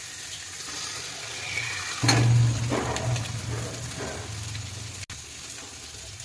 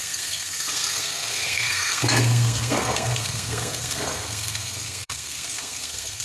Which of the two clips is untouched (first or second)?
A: first